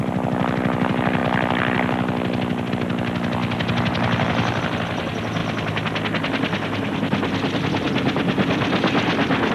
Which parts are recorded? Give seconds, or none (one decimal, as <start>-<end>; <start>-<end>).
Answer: 0.0-9.5